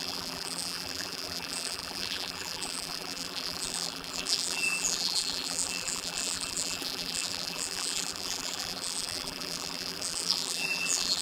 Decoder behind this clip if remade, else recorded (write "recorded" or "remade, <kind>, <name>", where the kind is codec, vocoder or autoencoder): remade, vocoder, BigVGAN v2